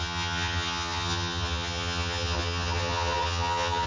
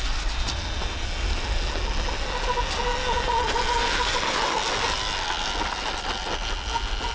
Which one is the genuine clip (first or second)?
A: second